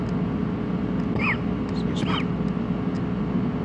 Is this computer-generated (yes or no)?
no